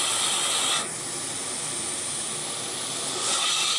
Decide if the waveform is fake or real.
real